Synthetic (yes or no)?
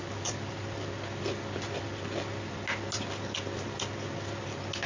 no